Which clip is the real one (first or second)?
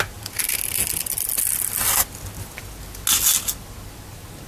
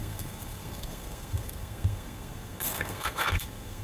first